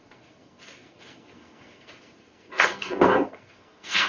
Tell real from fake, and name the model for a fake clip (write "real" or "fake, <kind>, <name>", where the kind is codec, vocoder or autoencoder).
fake, codec, SNAC